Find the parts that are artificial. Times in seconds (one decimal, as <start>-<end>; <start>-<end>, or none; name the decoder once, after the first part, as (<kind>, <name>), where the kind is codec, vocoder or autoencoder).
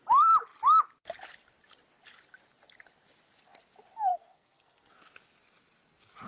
4.1-4.9 (codec, SNAC)